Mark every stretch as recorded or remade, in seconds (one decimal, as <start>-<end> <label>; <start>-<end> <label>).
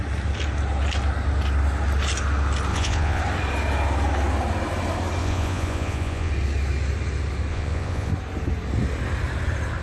0.0-2.7 recorded; 2.7-3.2 remade; 3.2-5.2 recorded; 5.2-6.3 remade; 6.3-7.5 recorded; 7.5-8.1 remade; 8.1-9.8 recorded